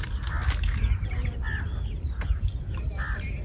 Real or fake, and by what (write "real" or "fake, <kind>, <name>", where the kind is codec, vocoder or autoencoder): real